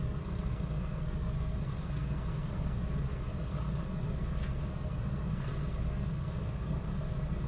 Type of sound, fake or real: fake